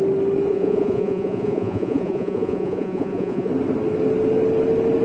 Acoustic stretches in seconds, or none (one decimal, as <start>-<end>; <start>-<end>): 0.0-0.5; 3.5-5.0